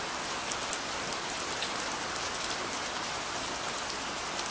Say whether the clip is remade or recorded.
recorded